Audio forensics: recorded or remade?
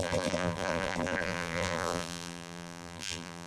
remade